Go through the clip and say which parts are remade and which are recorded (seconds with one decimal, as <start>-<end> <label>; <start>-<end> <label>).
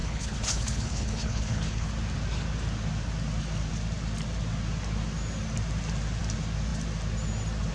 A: 0.0-1.9 remade; 1.9-7.7 recorded